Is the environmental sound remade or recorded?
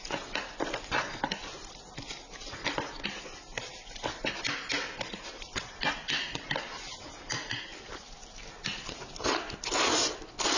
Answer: recorded